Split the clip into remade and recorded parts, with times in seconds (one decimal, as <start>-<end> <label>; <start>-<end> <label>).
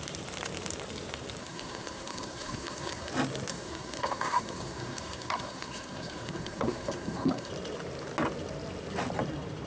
0.0-1.4 recorded; 1.4-3.1 remade; 3.1-3.5 recorded; 3.5-7.5 remade; 7.5-9.7 recorded